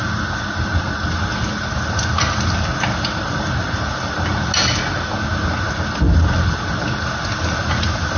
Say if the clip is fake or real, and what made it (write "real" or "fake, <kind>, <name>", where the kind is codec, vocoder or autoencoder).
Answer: real